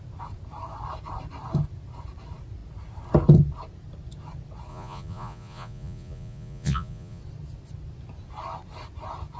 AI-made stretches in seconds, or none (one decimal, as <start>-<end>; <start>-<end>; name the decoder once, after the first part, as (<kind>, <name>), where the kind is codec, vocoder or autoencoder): 4.7-7.2 (vocoder, Vocos)